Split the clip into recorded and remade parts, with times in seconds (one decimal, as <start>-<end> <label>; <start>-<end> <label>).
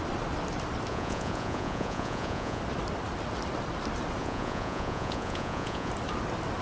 0.0-0.9 recorded; 0.9-2.6 remade; 2.6-4.2 recorded; 4.2-5.9 remade; 5.9-6.6 recorded